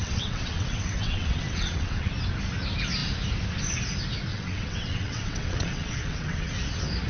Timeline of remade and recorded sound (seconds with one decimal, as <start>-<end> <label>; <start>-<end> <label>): 0.0-2.1 remade; 2.1-4.3 recorded; 4.3-6.5 remade; 6.5-7.1 recorded